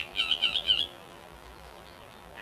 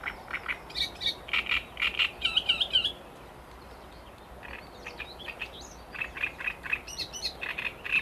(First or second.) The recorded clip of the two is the second